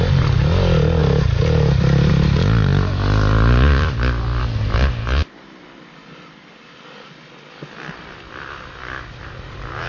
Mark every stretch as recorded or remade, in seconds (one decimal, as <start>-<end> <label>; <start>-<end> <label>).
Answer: 0.0-1.0 recorded; 1.0-2.1 remade; 2.1-2.7 recorded; 2.7-4.4 remade; 4.4-9.9 recorded